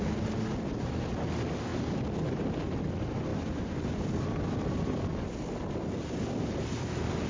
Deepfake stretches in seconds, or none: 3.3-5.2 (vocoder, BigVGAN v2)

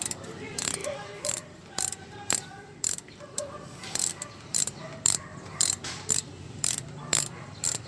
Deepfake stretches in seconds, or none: 0.0-7.9 (vocoder, BigVGAN v2)